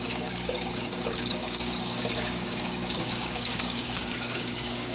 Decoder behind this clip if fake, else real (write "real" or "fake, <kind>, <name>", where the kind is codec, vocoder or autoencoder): fake, codec, DAC